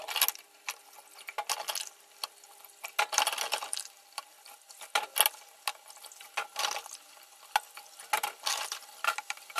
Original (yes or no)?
yes